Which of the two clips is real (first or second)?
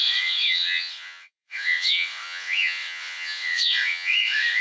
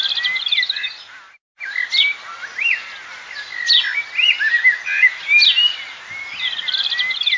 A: second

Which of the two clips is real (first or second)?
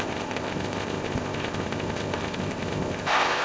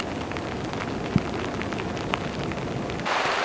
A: second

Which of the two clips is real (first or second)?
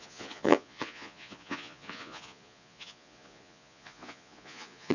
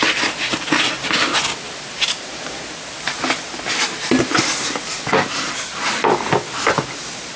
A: second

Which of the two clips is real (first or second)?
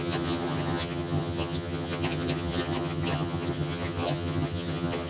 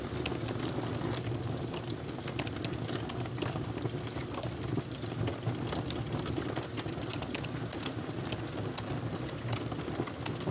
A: second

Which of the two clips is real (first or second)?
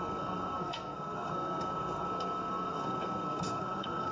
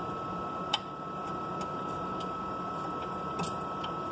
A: second